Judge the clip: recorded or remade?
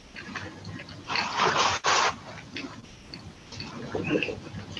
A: recorded